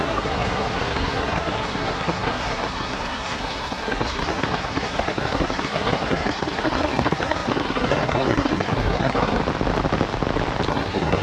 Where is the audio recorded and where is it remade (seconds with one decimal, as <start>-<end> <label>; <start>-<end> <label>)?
0.0-9.4 remade; 9.4-10.7 recorded; 10.7-11.2 remade